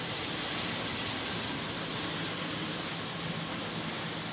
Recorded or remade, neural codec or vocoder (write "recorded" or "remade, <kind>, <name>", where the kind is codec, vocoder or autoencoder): recorded